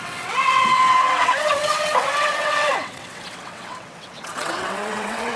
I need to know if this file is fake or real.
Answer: fake